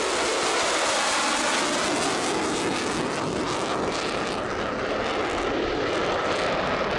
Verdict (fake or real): real